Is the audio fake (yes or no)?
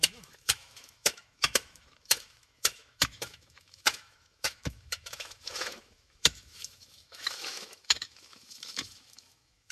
yes